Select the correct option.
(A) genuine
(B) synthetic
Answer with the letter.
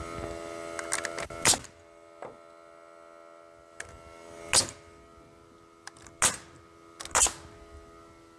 A